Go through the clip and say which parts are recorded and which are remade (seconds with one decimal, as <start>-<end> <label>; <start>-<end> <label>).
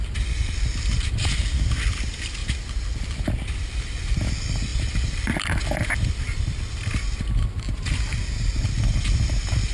0.0-2.4 recorded; 2.4-4.3 remade; 4.3-4.7 recorded; 4.7-5.6 remade; 5.6-9.7 recorded